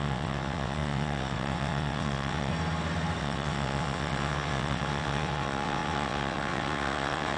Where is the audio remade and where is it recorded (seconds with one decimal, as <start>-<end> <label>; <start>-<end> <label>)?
0.0-2.5 remade; 2.5-3.2 recorded; 3.2-7.4 remade

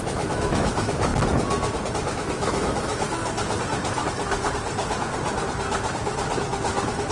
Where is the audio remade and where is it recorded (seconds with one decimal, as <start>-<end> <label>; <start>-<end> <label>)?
0.0-1.1 remade; 1.1-1.9 recorded; 1.9-3.2 remade; 3.2-7.1 recorded

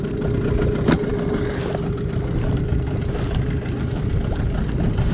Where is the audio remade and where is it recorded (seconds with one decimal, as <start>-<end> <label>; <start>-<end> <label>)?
0.0-5.1 recorded